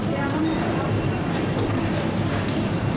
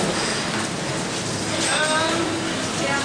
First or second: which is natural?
second